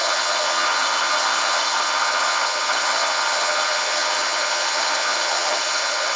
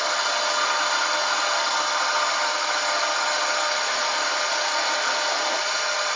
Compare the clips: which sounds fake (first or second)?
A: first